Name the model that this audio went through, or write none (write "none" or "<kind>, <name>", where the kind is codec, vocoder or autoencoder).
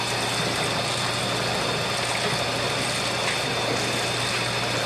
none